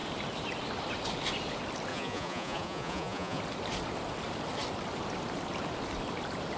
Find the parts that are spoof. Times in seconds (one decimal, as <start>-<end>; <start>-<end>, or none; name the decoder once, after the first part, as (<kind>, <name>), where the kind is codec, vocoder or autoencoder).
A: 1.9-3.4 (vocoder, Vocos)